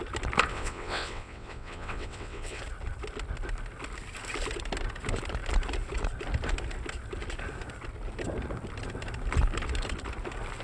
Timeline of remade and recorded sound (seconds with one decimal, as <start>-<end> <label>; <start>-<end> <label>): 0.0-0.5 recorded; 0.5-2.6 remade; 2.6-10.6 recorded